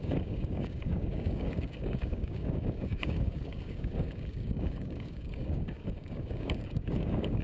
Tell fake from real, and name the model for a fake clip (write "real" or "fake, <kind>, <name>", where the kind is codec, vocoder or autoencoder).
fake, codec, DAC